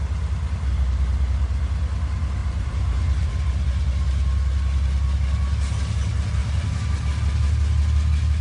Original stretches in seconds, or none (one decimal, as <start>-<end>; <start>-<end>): 0.0-2.4; 3.3-6.4; 7.0-8.4